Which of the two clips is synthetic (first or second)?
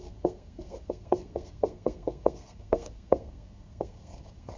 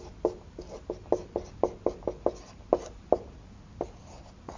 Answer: first